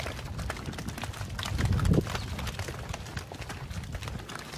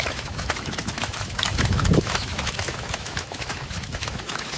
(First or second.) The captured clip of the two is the first